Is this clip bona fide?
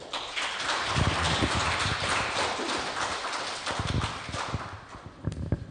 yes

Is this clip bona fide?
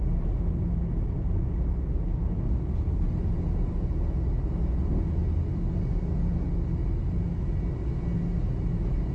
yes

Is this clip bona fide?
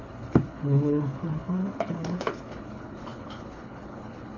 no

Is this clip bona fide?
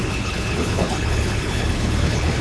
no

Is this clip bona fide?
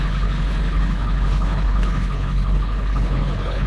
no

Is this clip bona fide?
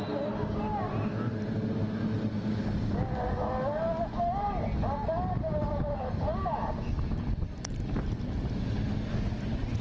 yes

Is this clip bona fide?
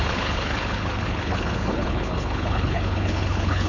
no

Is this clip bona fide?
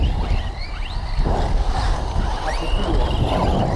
yes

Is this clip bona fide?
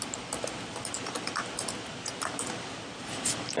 yes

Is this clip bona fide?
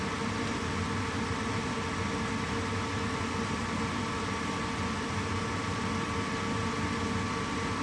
yes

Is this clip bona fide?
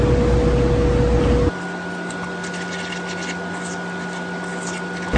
yes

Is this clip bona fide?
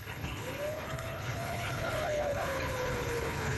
no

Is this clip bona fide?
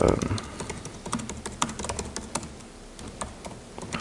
yes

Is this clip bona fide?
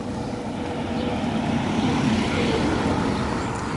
yes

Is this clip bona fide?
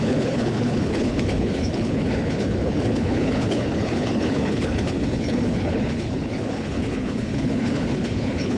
no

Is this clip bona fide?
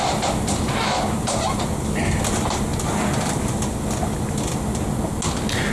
yes